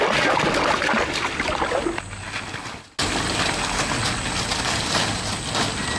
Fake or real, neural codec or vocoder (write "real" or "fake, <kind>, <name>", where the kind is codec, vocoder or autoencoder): real